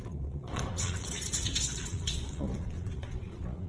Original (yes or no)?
no